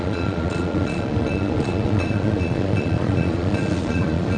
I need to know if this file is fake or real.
fake